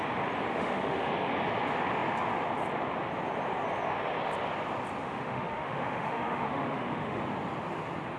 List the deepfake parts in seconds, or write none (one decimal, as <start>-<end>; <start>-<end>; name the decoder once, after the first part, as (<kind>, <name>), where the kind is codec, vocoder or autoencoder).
0.5-1.1 (autoencoder, DAC-VAE); 5.0-7.2